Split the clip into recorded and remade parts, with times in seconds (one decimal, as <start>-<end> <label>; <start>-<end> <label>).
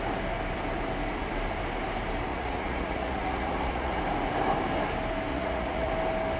0.0-2.3 recorded; 2.3-4.0 remade; 4.0-5.3 recorded; 5.3-5.9 remade; 5.9-6.4 recorded